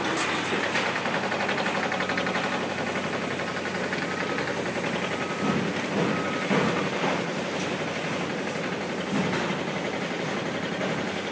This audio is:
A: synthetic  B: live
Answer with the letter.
B